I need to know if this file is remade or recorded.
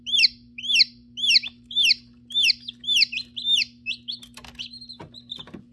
recorded